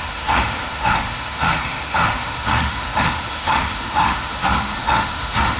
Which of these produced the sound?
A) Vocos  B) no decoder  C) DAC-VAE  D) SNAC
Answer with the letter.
C